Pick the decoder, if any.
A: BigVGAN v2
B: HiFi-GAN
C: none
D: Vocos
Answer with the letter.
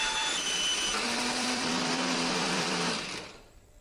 A